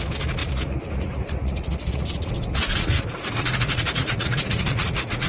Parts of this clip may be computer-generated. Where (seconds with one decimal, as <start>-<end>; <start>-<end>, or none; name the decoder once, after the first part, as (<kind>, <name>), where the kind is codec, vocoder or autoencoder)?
0.4-2.3 (vocoder, Vocos); 2.7-5.3